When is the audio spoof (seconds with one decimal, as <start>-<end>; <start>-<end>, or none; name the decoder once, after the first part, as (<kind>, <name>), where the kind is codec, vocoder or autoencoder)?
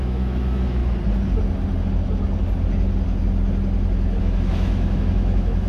0.0-0.8 (autoencoder, DAC-VAE); 4.2-5.7